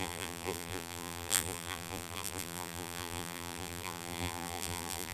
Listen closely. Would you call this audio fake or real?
fake